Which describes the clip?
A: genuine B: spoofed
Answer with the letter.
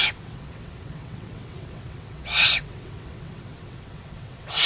B